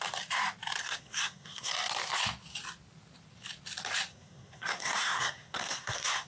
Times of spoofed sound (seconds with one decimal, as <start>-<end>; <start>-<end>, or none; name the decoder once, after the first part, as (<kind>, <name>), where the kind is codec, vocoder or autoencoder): 0.8-1.7 (codec, SNAC); 4.1-6.3